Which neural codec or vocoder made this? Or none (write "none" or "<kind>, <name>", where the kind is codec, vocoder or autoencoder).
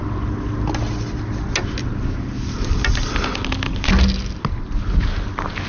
none